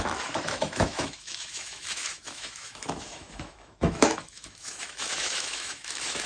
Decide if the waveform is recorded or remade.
remade